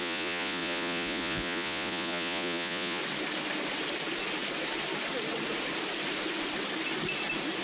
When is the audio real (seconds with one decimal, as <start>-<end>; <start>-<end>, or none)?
3.0-7.6